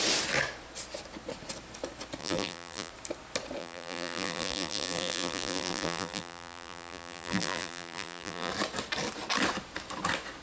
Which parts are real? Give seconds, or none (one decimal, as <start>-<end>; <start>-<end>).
0.0-2.2; 2.9-3.6; 8.5-10.4